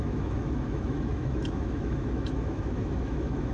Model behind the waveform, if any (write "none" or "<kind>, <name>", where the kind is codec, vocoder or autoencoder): autoencoder, DAC-VAE